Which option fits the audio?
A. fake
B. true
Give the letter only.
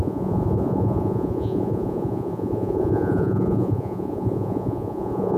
A